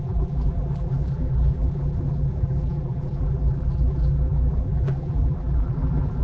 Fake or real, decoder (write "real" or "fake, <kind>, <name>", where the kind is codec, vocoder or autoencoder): fake, vocoder, BigVGAN v2